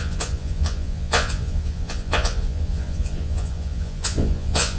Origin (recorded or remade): remade